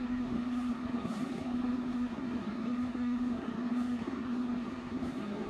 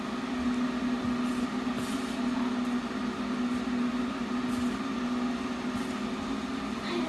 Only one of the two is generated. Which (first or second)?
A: first